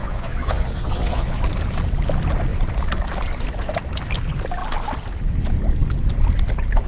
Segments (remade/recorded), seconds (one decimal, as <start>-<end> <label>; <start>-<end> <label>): 0.0-1.4 remade; 1.4-6.9 recorded